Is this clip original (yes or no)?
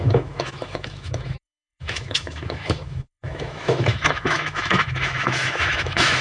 no